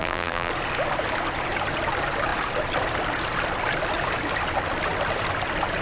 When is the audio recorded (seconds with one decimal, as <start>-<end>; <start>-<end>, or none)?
0.5-5.8